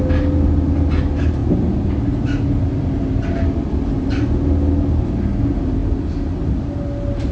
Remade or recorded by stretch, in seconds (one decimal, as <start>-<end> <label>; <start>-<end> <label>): 0.0-7.3 recorded